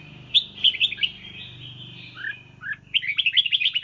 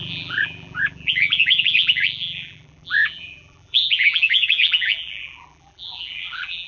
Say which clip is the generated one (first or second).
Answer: second